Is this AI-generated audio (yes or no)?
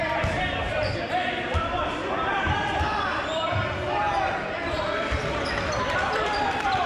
yes